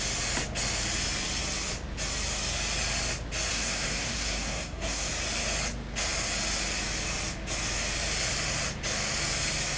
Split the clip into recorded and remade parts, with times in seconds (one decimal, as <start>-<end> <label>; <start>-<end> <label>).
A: 0.0-3.5 recorded; 3.5-5.1 remade; 5.1-9.8 recorded